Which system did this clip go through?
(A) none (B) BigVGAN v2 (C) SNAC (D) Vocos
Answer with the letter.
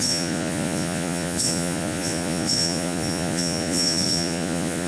D